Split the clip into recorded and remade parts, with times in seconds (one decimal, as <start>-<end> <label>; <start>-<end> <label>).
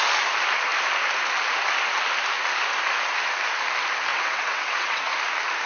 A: 0.0-4.1 recorded; 4.1-5.1 remade; 5.1-5.7 recorded